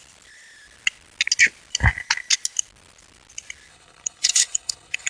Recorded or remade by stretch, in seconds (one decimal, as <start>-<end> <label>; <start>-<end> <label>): 0.0-3.7 recorded; 3.7-5.1 remade